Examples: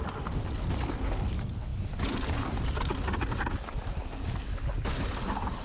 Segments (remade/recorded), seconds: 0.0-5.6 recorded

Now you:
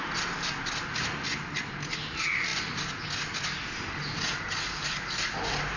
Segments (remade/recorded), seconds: 0.0-5.8 recorded

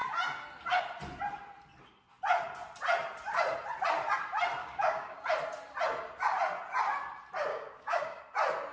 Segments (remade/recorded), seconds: 0.0-4.6 recorded; 4.6-5.2 remade; 5.2-7.5 recorded; 7.5-8.2 remade; 8.2-8.7 recorded

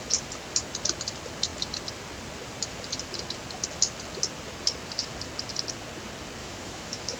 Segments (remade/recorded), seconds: 0.0-6.4 recorded; 6.4-7.2 remade

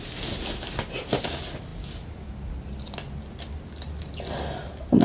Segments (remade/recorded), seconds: 0.0-5.0 recorded

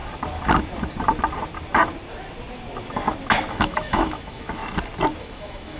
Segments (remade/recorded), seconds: 0.0-3.5 recorded; 3.5-4.6 remade; 4.6-5.2 recorded; 5.2-5.8 remade

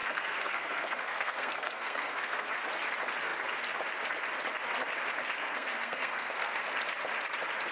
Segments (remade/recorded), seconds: 0.0-2.5 remade; 2.5-5.4 recorded; 5.4-6.6 remade; 6.6-7.7 recorded

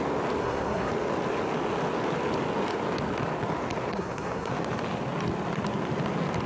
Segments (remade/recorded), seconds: 0.0-0.4 recorded; 0.4-0.9 remade; 0.9-3.9 recorded; 3.9-4.5 remade; 4.5-6.5 recorded